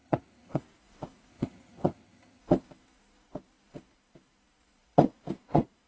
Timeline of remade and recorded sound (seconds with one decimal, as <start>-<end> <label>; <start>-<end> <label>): 0.0-0.6 remade; 0.6-1.3 recorded; 1.3-2.4 remade; 2.4-5.9 recorded